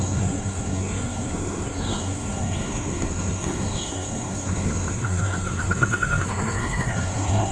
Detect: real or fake fake